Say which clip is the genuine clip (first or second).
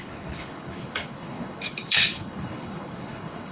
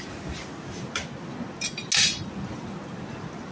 second